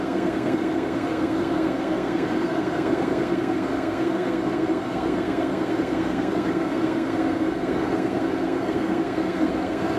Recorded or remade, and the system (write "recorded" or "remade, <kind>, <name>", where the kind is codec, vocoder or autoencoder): remade, codec, SNAC